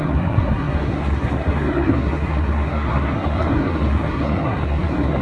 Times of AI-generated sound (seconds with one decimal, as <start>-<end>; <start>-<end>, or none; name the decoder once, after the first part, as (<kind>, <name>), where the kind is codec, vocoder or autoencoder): 0.0-5.2 (codec, SNAC)